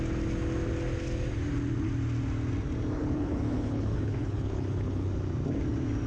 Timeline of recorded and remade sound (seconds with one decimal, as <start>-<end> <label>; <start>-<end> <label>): 0.0-3.0 recorded; 3.0-5.1 remade; 5.1-6.1 recorded